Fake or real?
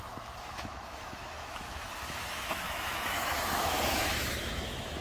fake